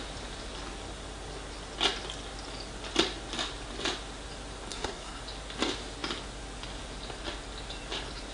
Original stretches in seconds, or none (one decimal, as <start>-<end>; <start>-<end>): 0.0-4.7; 5.2-8.3